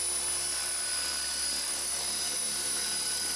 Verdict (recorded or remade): recorded